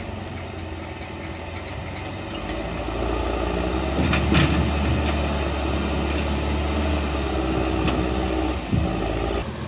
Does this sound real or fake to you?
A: real